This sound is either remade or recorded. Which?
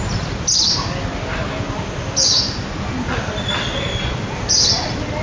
recorded